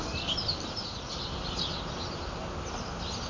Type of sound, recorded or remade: recorded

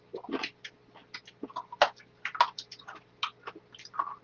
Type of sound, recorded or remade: recorded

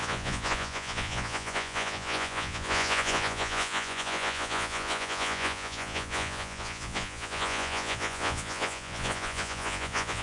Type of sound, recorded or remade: remade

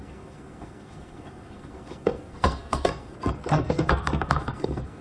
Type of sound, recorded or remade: remade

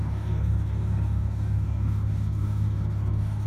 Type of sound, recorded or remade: remade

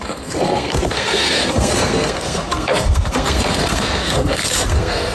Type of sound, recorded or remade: remade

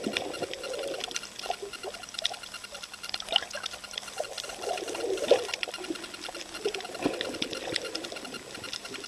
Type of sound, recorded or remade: recorded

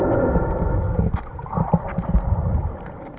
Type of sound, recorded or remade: recorded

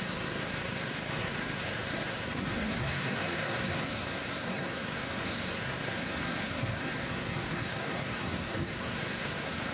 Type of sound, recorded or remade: remade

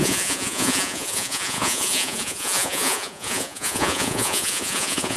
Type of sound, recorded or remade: remade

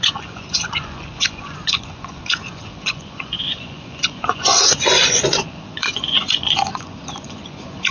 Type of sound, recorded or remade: remade